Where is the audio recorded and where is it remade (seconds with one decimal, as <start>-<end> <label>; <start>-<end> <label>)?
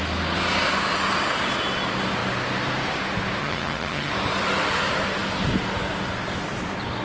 0.0-3.4 recorded; 3.4-4.1 remade; 4.1-7.0 recorded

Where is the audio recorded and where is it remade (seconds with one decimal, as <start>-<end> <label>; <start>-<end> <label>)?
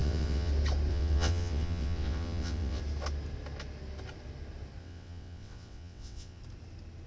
0.0-0.5 remade; 0.5-0.9 recorded; 0.9-2.8 remade; 2.8-4.8 recorded; 4.8-6.4 remade; 6.4-7.1 recorded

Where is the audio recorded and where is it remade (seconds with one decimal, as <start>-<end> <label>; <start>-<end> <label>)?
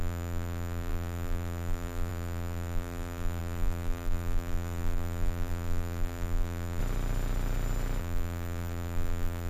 0.0-6.8 remade; 6.8-8.0 recorded; 8.0-9.5 remade